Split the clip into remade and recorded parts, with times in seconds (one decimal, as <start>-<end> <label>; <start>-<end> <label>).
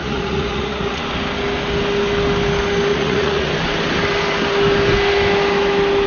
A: 0.0-1.0 remade; 1.0-2.9 recorded; 2.9-3.5 remade; 3.5-6.1 recorded